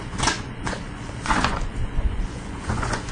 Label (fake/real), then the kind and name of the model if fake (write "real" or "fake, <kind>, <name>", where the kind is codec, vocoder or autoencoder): fake, vocoder, Vocos